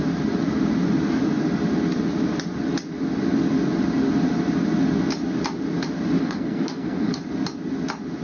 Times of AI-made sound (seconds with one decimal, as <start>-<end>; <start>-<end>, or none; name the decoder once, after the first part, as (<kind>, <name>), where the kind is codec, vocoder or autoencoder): 6.2-7.2 (codec, SNAC)